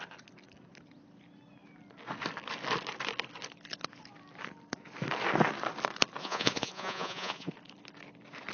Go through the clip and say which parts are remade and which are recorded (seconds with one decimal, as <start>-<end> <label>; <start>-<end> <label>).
0.0-6.2 recorded; 6.2-7.5 remade; 7.5-8.5 recorded